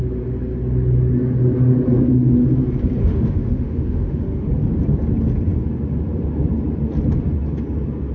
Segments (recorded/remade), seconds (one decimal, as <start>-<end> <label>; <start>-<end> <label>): 0.0-3.0 recorded; 3.0-4.5 remade; 4.5-8.1 recorded